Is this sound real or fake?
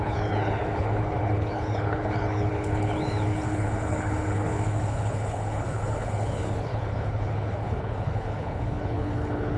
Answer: fake